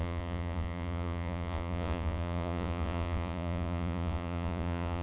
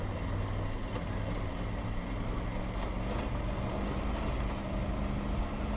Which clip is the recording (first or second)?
second